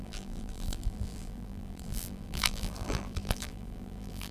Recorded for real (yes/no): no